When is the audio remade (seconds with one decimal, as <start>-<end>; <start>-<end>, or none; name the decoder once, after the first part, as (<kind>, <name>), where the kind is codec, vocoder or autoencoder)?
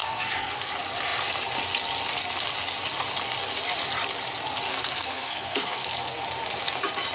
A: 0.0-0.7 (codec, SNAC); 4.7-6.2